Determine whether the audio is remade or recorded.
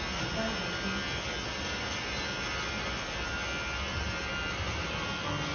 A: recorded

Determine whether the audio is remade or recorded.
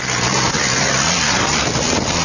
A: recorded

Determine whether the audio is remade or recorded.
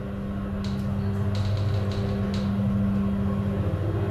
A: recorded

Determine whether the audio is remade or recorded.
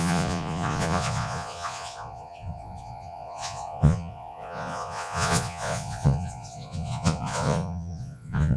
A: remade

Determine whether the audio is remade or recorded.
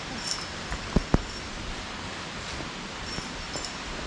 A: recorded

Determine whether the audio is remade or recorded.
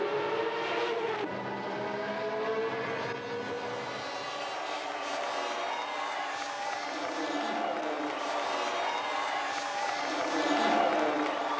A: recorded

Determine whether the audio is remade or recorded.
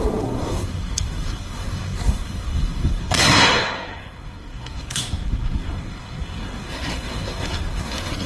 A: remade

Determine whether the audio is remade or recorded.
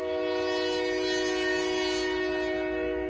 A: recorded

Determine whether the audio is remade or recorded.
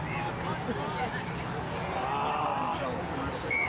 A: recorded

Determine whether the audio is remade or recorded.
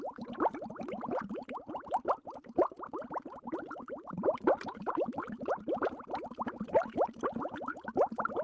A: remade